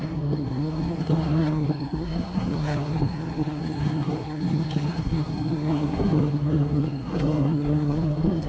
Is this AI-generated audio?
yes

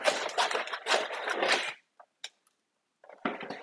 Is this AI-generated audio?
no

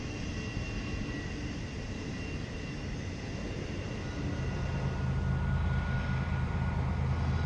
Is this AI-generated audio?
no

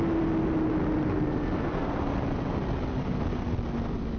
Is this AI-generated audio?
no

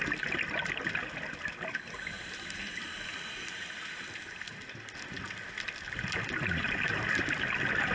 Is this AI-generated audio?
no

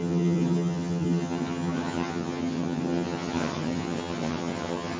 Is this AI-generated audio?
yes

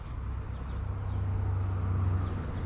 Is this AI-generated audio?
no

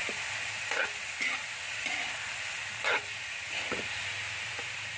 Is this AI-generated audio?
no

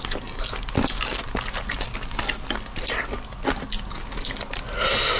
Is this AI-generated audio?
no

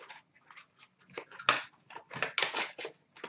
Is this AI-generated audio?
no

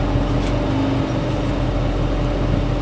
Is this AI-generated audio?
no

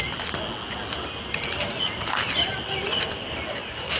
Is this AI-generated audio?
no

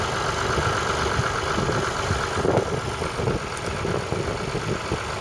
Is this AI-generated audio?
no